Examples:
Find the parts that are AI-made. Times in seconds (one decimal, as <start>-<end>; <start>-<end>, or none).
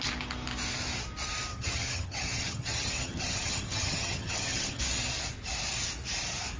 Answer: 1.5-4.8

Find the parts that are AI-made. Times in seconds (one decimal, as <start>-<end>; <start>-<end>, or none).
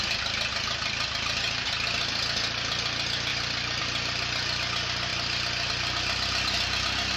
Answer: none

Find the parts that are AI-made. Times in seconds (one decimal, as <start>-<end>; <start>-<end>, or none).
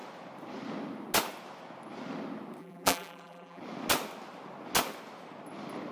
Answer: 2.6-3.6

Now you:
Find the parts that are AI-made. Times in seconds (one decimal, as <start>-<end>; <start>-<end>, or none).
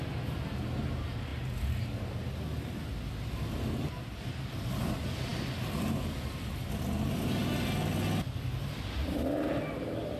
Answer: none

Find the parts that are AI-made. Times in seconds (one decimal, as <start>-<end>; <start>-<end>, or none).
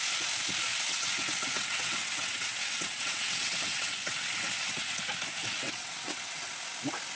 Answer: 0.7-5.0; 5.4-6.5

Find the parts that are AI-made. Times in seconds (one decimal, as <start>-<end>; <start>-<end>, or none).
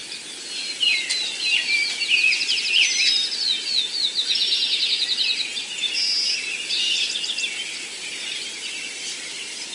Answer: none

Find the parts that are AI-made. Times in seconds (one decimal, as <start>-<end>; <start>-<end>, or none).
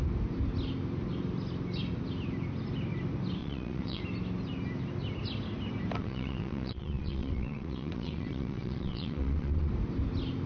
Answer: 3.4-4.0; 6.0-9.7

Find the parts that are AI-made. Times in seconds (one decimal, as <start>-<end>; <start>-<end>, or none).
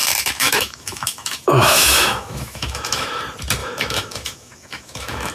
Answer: 0.0-3.2; 3.6-5.3